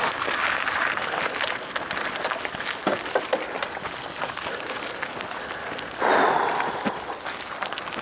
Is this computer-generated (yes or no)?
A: no